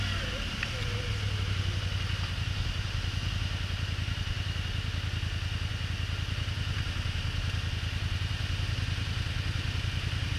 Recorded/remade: recorded